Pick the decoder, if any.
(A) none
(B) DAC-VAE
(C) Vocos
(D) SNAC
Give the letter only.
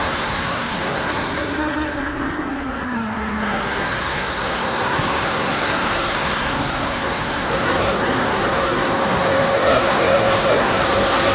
D